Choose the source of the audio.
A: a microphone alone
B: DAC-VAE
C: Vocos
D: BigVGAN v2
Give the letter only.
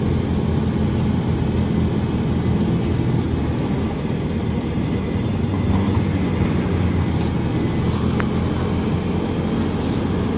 A